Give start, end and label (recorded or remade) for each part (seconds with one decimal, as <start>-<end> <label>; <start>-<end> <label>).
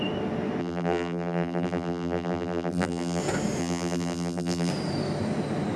0.0-0.6 recorded; 0.6-3.2 remade; 3.2-3.6 recorded; 3.6-4.7 remade; 4.7-5.8 recorded